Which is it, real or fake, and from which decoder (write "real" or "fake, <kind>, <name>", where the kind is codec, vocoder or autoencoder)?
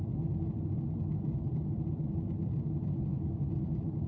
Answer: real